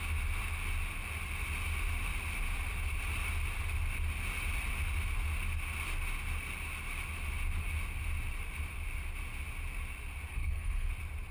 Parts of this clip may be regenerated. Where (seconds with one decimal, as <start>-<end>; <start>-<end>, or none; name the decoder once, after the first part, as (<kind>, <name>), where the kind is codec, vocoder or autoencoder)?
10.3-10.9 (codec, SNAC)